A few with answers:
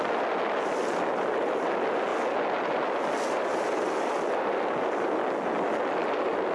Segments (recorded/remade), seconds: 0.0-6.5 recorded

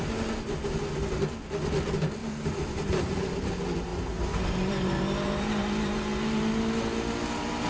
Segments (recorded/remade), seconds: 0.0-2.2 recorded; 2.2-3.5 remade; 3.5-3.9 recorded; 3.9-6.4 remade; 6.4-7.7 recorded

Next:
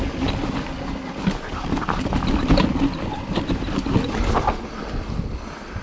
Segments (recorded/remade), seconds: 0.0-5.8 recorded

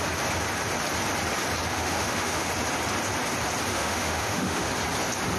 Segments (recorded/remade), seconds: 0.0-1.7 recorded; 1.7-2.5 remade; 2.5-3.7 recorded; 3.7-4.7 remade; 4.7-5.4 recorded

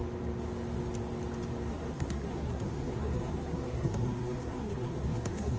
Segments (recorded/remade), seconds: 0.0-1.7 recorded; 1.7-5.6 remade

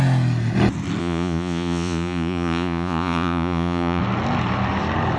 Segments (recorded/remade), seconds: 0.0-1.0 recorded; 1.0-4.0 remade; 4.0-5.2 recorded

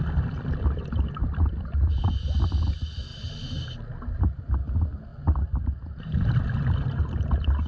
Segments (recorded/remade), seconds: 0.0-7.7 recorded